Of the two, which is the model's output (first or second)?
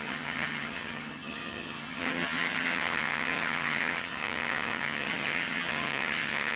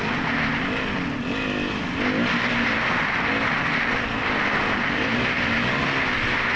first